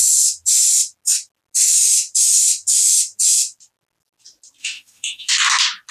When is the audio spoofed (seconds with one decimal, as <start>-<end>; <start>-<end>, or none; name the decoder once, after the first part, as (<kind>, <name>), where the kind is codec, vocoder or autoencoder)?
4.6-5.3 (autoencoder, DAC-VAE)